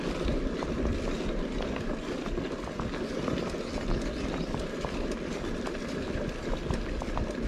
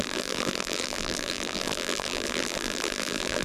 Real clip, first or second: first